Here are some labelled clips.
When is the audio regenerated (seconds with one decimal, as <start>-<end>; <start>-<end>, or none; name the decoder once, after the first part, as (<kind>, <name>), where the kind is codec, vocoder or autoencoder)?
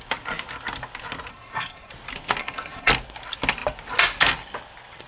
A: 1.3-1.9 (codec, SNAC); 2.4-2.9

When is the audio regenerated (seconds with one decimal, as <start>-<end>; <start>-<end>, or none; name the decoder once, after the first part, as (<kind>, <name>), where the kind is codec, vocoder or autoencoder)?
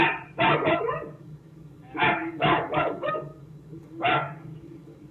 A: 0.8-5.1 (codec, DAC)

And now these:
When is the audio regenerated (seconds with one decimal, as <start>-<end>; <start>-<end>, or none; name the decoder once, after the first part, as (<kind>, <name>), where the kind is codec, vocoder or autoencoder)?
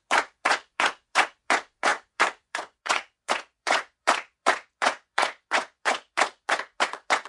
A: 0.0-7.3 (vocoder, Vocos)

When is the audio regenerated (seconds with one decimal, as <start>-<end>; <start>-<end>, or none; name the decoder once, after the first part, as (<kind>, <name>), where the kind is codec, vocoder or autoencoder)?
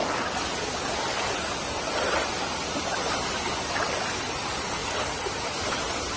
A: none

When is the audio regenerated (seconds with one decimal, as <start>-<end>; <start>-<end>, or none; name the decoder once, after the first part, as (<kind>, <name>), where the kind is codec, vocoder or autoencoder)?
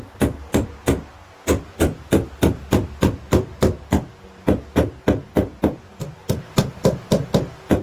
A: none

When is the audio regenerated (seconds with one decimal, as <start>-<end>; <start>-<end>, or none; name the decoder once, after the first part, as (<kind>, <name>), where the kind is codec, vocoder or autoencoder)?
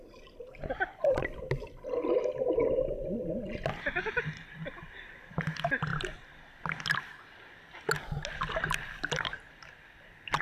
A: none